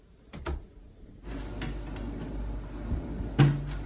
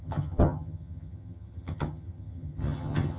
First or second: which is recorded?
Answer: first